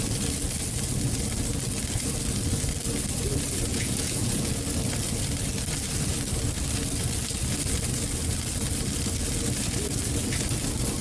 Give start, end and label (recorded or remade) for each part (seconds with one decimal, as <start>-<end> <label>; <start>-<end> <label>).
0.0-3.7 recorded; 3.7-4.5 remade; 4.5-11.0 recorded